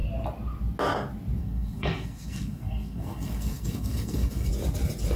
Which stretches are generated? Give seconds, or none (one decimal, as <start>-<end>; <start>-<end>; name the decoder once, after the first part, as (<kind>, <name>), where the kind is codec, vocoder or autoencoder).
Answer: 1.4-4.5 (codec, SNAC)